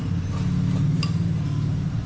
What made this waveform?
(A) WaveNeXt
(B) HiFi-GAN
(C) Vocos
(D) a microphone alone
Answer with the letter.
D